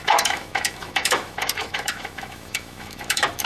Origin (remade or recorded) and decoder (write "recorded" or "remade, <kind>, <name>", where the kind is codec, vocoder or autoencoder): remade, autoencoder, DAC-VAE